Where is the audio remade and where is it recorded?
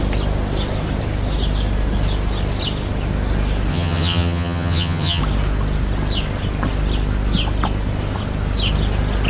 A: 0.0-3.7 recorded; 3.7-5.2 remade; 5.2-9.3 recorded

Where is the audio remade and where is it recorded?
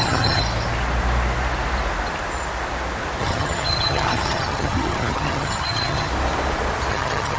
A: 0.0-0.4 remade; 0.4-3.2 recorded; 3.2-6.1 remade; 6.1-6.9 recorded; 6.9-7.4 remade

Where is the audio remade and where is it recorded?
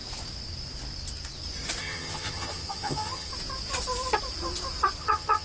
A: 0.0-1.8 recorded; 1.8-3.3 remade; 3.3-5.0 recorded; 5.0-5.4 remade